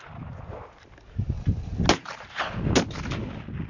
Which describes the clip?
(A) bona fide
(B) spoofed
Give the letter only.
A